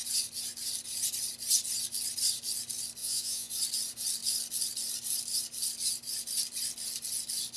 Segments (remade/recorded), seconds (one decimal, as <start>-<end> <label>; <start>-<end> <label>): 0.0-3.0 recorded; 3.0-3.5 remade; 3.5-7.6 recorded